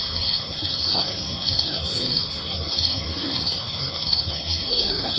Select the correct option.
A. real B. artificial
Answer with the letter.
B